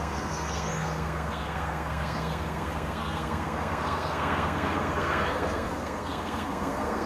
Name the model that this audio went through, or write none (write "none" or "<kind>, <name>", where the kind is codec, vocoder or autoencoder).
codec, SNAC